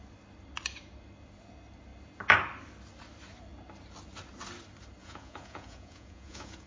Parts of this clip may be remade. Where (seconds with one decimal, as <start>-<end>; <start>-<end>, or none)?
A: 5.0-6.7